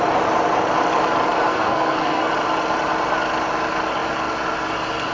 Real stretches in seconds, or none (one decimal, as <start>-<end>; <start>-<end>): 0.0-1.5; 2.3-5.1